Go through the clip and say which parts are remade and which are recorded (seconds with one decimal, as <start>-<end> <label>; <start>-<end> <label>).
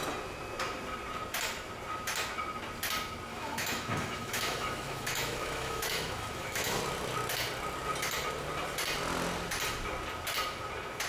0.0-3.3 recorded; 3.3-6.8 remade; 6.8-11.1 recorded